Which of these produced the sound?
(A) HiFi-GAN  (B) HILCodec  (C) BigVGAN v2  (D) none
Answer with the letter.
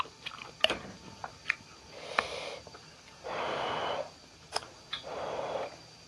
D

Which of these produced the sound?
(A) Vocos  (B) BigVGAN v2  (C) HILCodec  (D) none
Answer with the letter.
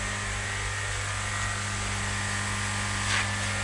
D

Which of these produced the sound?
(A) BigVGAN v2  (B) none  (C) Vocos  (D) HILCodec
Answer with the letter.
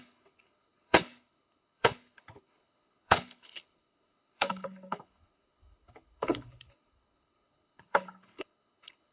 D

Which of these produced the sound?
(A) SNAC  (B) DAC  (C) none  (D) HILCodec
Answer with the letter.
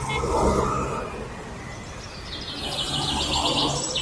C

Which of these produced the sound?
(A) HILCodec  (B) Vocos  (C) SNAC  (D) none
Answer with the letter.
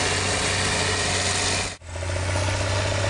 D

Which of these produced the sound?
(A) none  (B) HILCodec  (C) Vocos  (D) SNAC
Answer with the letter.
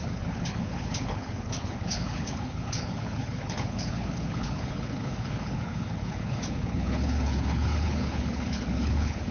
B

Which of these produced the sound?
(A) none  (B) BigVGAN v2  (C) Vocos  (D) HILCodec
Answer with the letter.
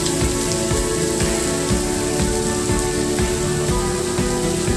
A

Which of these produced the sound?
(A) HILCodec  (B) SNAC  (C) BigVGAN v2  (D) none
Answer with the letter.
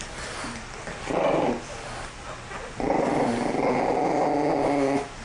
D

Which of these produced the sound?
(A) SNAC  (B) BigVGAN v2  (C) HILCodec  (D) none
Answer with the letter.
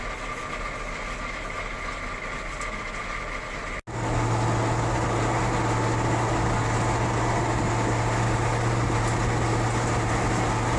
D